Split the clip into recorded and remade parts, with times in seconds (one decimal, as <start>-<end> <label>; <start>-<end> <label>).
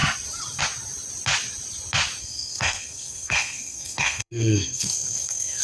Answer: 0.0-2.2 recorded; 2.2-5.6 remade